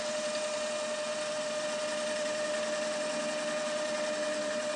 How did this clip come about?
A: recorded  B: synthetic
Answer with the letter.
A